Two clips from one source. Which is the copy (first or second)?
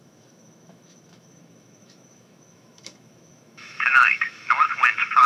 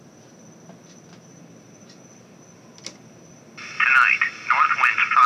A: first